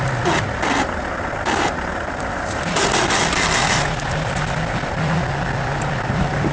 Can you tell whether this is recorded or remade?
recorded